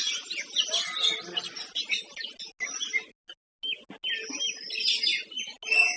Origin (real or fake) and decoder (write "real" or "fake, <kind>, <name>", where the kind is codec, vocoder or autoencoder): real